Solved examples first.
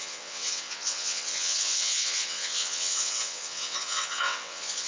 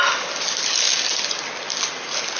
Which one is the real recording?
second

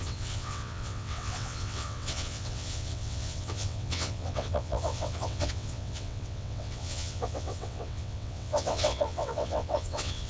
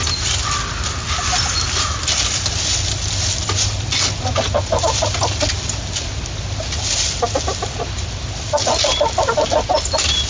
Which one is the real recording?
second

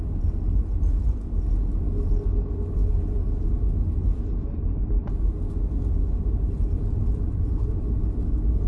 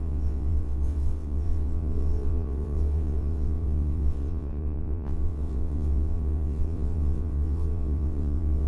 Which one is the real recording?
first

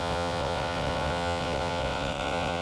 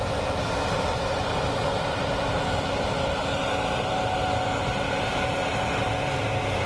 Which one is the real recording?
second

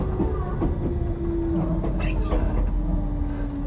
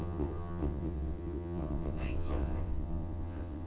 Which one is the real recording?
first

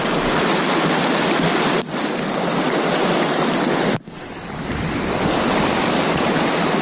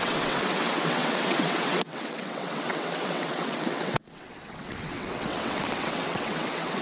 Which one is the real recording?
first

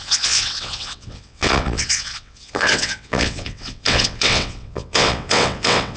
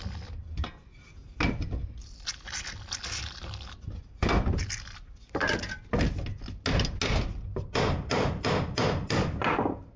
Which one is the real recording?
second